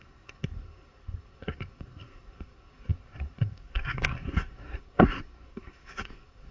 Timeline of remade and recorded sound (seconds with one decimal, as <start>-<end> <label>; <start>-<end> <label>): 0.0-6.5 remade